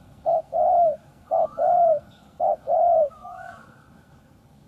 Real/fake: fake